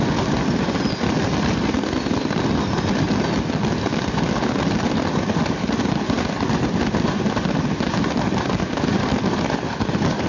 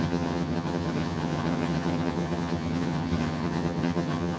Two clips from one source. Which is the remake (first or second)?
second